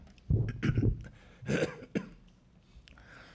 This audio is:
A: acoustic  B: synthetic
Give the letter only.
A